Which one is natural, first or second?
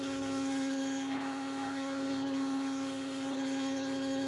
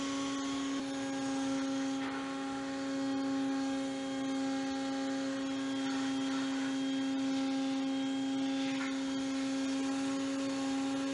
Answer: second